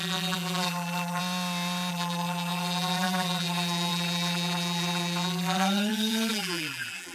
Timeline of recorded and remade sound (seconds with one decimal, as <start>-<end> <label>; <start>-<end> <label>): 0.0-1.2 remade; 1.2-1.9 recorded; 1.9-7.1 remade